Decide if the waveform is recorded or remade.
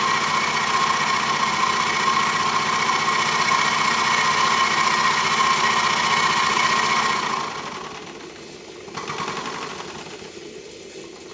recorded